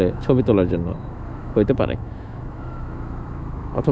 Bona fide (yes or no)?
no